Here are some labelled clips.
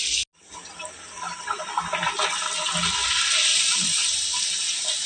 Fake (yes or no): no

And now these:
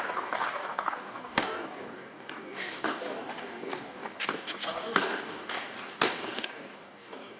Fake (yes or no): yes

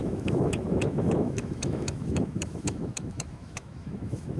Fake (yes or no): yes